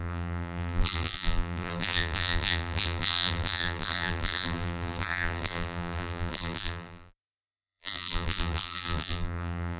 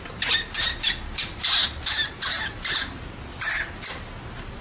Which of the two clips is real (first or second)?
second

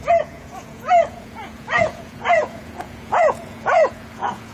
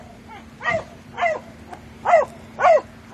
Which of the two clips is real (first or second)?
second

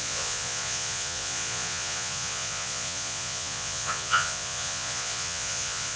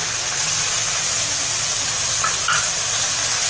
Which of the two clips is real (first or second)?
second